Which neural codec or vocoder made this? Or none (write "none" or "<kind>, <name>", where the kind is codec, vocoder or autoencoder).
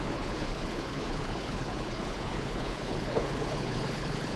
codec, HILCodec